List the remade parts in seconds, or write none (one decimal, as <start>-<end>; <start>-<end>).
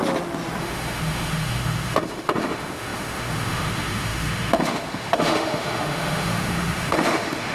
0.6-7.5